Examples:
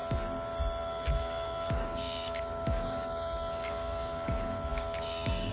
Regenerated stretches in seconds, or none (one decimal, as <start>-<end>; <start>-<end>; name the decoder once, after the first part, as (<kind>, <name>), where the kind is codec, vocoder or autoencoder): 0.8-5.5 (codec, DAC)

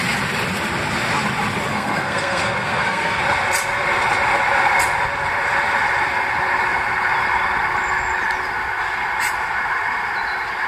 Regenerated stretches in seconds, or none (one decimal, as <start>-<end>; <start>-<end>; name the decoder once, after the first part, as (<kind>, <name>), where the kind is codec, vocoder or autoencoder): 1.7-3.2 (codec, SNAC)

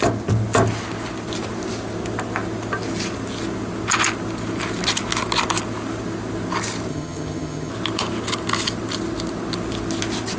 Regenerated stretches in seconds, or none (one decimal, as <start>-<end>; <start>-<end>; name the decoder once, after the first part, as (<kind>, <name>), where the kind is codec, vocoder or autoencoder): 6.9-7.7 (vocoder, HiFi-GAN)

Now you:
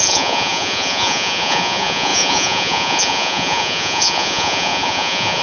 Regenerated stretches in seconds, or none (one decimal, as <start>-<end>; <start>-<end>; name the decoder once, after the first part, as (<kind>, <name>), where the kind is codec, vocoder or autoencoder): 0.0-5.4 (vocoder, Vocos)

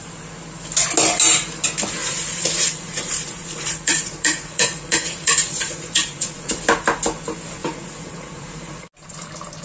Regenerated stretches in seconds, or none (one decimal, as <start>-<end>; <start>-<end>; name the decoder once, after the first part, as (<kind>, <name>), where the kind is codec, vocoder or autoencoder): 2.0-6.5 (vocoder, Vocos); 7.6-8.9